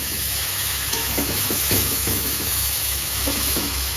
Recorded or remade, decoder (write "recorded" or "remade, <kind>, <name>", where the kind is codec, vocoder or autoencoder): remade, autoencoder, DAC-VAE